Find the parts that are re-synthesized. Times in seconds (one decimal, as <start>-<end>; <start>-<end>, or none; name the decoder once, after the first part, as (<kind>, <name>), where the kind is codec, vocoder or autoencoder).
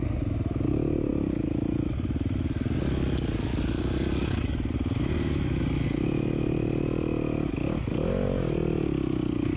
none